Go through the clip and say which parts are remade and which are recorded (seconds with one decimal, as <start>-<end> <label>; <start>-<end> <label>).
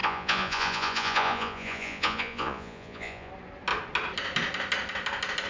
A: 0.0-3.3 remade; 3.3-5.5 recorded